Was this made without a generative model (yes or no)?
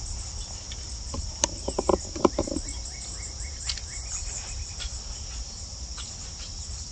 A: yes